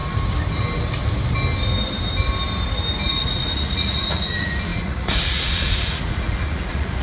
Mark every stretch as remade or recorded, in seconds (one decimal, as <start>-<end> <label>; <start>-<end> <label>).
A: 0.0-3.1 recorded; 3.1-7.0 remade